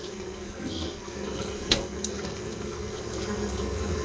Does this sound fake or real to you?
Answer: fake